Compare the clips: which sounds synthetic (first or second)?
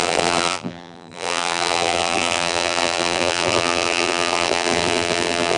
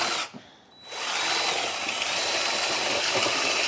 first